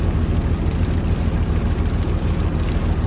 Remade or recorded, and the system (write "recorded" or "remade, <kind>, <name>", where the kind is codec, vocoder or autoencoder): recorded